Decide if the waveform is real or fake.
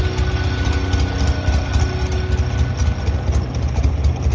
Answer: real